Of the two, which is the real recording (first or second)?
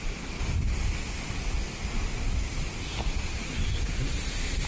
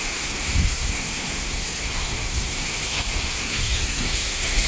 first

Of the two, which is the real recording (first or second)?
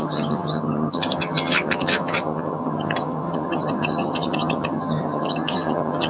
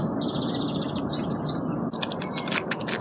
second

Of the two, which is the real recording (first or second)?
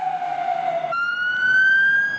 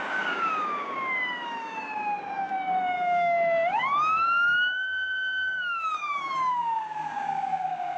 first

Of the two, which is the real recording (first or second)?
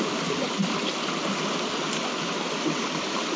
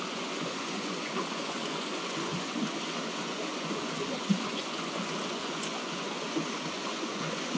first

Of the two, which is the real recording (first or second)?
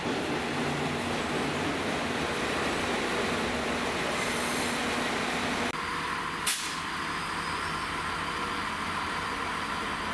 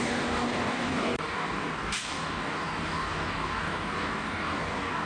first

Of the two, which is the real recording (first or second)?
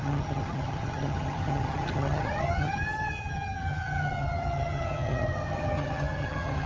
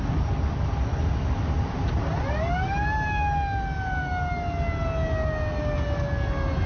second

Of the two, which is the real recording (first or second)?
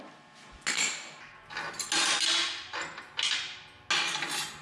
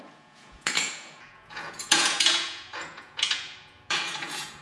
first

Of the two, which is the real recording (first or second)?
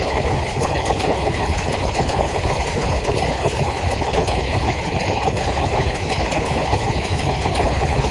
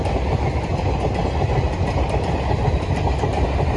second